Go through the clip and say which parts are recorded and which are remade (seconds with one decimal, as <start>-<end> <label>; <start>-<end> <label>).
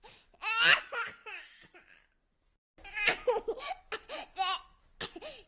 0.0-5.5 recorded